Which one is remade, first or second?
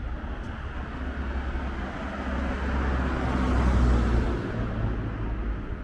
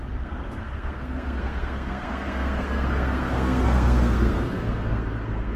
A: second